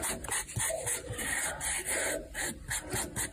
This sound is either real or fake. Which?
real